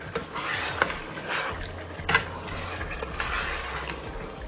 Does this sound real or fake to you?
real